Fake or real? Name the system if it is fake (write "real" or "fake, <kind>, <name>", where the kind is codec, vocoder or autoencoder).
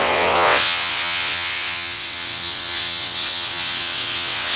fake, vocoder, WaveNeXt